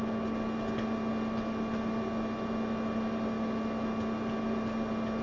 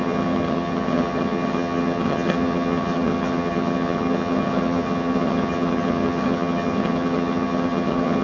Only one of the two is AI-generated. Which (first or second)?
second